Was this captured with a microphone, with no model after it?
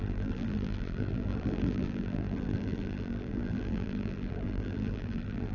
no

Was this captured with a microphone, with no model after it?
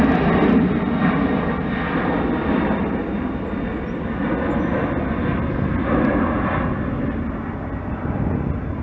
yes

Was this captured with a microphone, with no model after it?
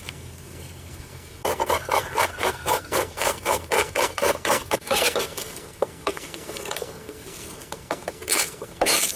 no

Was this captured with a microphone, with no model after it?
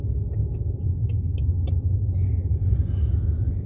yes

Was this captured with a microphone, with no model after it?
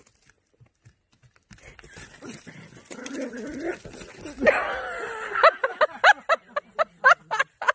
yes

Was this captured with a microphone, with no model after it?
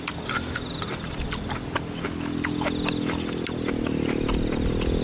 yes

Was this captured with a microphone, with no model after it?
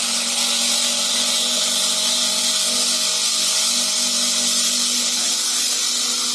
yes